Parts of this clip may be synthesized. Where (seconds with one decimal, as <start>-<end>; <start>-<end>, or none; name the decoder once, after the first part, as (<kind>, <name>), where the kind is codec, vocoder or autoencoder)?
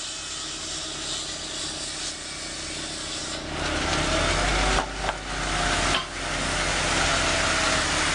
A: none